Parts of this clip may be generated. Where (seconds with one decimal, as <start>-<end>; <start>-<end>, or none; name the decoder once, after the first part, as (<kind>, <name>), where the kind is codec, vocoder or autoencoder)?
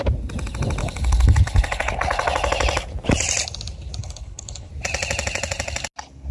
0.8-1.9 (codec, HILCodec); 4.0-4.7